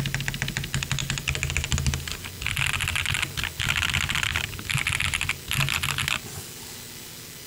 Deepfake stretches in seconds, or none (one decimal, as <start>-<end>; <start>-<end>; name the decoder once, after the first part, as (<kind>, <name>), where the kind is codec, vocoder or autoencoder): none